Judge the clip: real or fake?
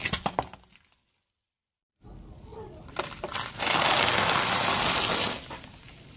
real